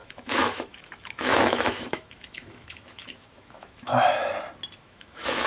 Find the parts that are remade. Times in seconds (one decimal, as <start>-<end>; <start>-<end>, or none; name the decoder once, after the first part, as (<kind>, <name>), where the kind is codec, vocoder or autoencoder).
0.0-3.9 (autoencoder, DAC-VAE); 4.8-5.5